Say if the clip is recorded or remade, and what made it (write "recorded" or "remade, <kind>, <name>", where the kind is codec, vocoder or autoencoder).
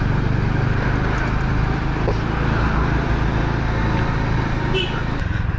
recorded